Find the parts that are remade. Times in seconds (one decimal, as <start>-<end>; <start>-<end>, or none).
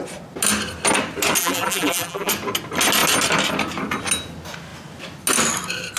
1.4-2.3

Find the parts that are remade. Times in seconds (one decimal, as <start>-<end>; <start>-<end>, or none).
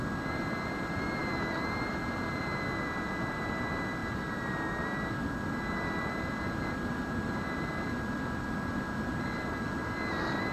none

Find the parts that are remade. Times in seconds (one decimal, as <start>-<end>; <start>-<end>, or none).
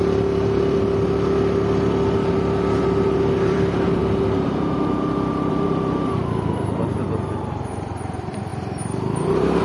0.0-4.0; 5.5-9.6